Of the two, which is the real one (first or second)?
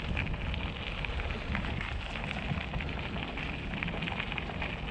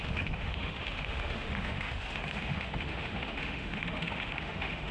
first